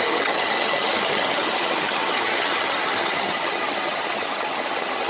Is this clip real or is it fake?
fake